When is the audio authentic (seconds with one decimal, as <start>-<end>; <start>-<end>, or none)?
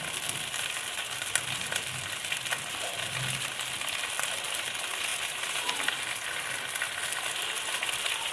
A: 0.0-5.1; 5.9-8.3